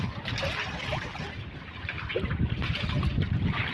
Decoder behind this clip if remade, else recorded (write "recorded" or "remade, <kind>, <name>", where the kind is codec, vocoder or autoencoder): recorded